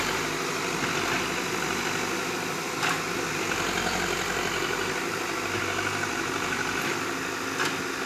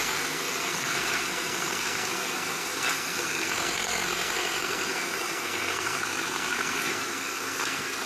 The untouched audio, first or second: first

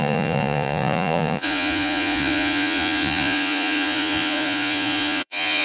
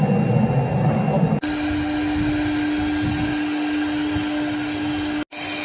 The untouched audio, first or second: second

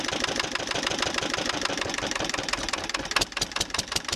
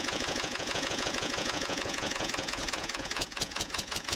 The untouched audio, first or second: first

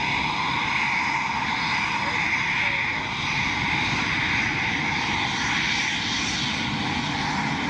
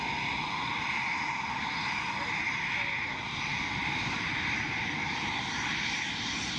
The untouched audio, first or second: first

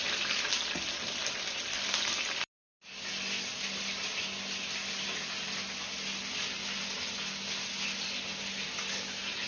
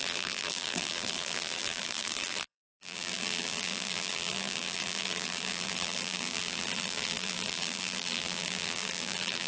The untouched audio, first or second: first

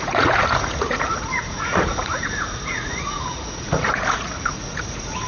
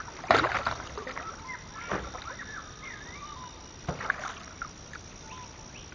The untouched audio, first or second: second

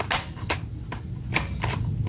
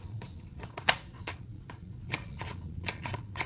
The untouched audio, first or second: first